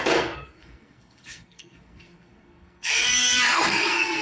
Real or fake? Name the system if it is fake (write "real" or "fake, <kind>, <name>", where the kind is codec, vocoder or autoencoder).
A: fake, codec, SNAC